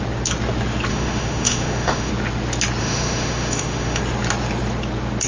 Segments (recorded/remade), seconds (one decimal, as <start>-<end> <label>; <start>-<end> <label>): 0.0-0.9 recorded; 0.9-2.1 remade; 2.1-2.8 recorded; 2.8-4.0 remade; 4.0-5.3 recorded